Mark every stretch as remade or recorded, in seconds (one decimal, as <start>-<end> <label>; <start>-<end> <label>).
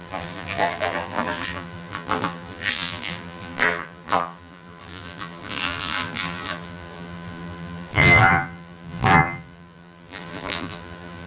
0.0-11.3 remade